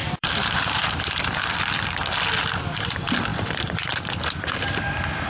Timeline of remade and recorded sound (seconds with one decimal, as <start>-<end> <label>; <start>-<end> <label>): 0.0-1.2 remade; 1.2-5.3 recorded